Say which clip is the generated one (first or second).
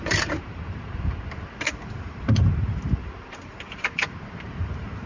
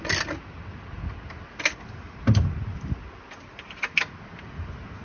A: first